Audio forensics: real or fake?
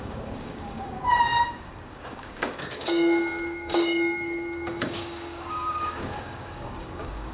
fake